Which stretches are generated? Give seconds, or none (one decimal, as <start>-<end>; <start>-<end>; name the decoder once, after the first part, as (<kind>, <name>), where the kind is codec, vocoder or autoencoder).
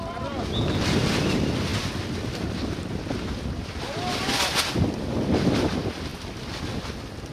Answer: none